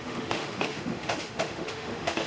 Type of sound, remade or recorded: remade